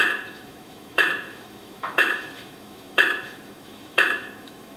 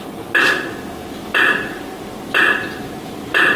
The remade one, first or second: first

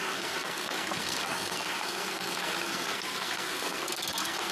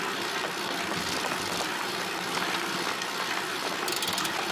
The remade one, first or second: first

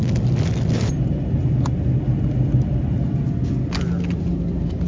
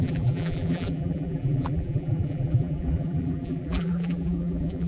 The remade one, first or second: second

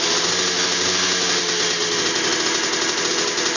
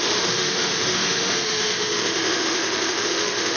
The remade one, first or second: second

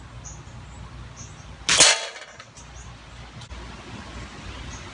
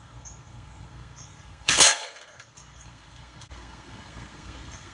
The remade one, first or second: second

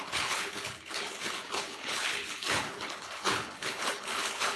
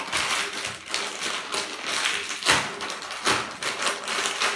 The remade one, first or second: first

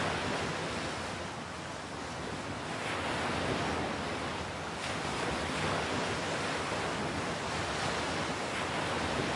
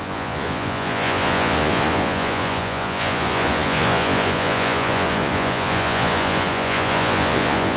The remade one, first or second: second